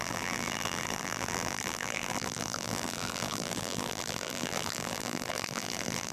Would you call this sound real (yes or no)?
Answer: no